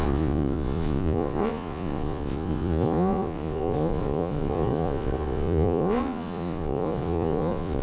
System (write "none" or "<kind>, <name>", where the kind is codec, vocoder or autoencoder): vocoder, Vocos